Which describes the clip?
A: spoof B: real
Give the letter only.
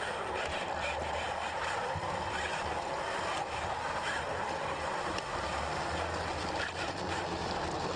B